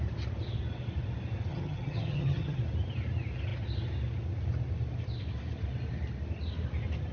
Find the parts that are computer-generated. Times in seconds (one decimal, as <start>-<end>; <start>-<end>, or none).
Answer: 1.5-2.6